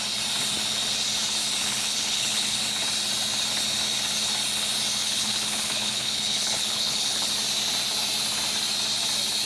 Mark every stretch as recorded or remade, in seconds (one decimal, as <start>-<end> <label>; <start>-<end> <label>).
0.0-1.6 recorded; 1.6-2.6 remade; 2.6-5.0 recorded; 5.0-7.3 remade; 7.3-9.5 recorded